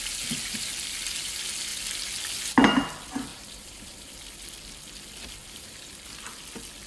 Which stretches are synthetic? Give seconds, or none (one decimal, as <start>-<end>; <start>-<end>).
3.3-4.1; 5.4-5.9